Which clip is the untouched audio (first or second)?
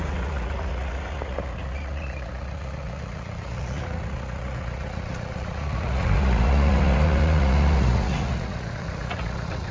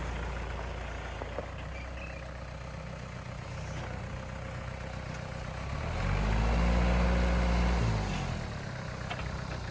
second